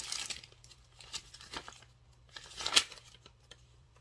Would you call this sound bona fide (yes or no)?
no